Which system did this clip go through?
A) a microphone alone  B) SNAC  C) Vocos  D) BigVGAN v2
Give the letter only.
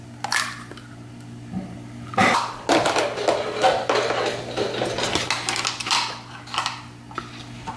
A